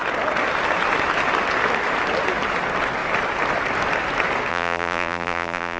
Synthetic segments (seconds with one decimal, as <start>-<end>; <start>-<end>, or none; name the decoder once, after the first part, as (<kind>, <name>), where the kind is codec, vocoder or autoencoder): 4.5-5.8 (vocoder, BigVGAN v2)